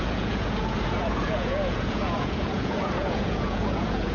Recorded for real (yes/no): no